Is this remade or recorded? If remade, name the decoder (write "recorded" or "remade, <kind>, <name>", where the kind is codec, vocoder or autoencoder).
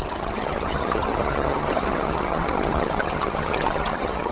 remade, vocoder, HiFi-GAN